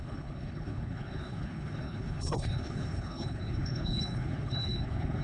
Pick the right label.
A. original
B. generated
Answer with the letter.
B